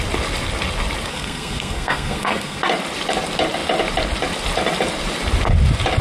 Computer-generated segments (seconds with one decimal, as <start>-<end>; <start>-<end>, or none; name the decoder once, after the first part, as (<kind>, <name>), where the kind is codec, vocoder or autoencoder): 1.1-2.6 (codec, SNAC)